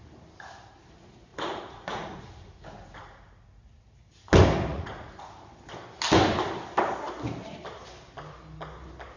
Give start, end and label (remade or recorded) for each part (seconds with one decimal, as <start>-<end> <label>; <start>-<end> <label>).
0.0-1.3 recorded; 1.3-2.6 remade; 2.6-4.7 recorded; 4.7-5.5 remade; 5.5-9.2 recorded